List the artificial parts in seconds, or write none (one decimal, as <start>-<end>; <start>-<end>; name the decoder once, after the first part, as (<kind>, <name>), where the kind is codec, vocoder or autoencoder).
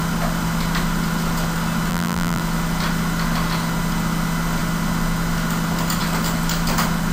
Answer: 1.9-2.4 (vocoder, BigVGAN v2)